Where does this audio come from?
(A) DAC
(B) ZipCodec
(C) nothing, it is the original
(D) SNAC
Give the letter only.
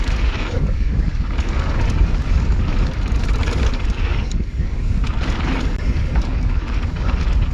A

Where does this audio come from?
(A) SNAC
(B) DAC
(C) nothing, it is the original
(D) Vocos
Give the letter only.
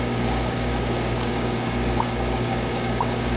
B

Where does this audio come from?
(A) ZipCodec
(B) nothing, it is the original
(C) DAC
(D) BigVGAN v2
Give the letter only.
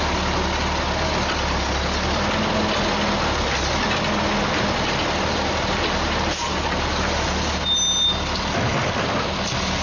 B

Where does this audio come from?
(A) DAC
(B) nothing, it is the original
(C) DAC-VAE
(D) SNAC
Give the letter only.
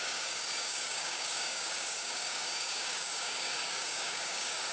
A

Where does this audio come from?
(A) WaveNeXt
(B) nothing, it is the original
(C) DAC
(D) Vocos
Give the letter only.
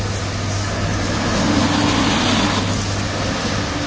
B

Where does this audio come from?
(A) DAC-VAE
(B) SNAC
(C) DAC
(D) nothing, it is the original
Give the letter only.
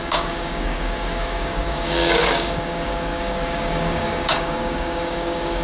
C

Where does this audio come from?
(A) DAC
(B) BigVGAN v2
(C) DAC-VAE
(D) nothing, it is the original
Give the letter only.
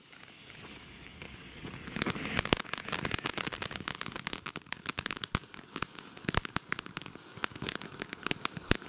A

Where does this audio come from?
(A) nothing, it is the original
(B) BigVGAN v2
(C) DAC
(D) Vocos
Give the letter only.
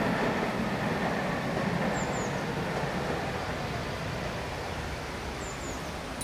A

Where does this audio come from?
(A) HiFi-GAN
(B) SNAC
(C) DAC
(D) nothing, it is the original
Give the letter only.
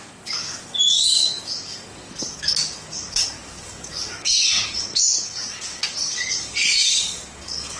C